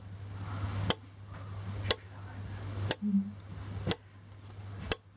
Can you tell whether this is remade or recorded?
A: recorded